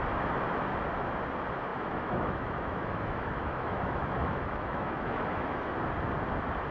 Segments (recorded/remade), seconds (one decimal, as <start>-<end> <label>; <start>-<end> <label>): 0.0-1.7 recorded; 1.7-5.7 remade; 5.7-6.7 recorded